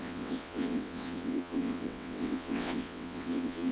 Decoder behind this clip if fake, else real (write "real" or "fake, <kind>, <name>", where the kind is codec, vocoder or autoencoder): fake, vocoder, WaveNeXt